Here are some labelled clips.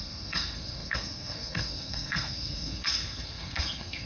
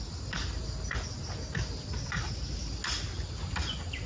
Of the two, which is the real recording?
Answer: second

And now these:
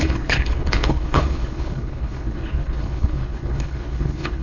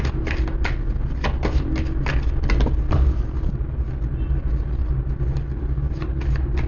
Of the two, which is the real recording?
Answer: second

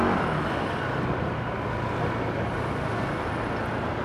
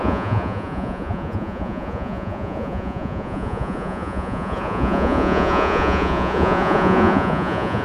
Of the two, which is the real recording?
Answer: first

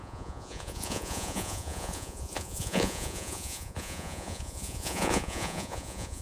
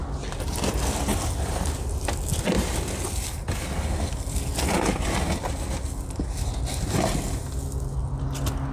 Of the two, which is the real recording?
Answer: second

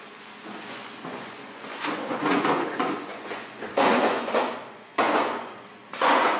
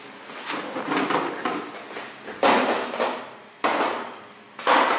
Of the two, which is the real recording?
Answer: second